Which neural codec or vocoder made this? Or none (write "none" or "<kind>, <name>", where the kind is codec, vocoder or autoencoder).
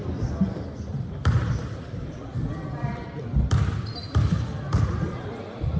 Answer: vocoder, BigVGAN v2